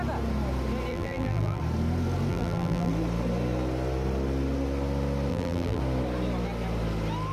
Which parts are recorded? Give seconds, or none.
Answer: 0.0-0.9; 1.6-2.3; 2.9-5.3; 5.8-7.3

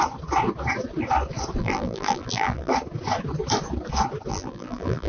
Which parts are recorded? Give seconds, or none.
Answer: 0.0-1.6; 2.7-4.3